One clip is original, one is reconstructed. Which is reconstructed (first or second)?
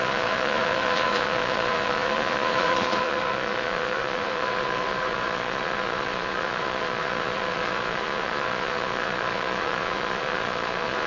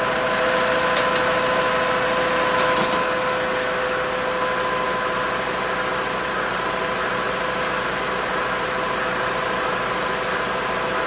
first